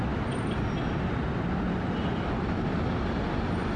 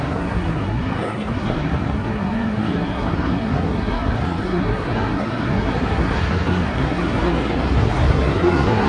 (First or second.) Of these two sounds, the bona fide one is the first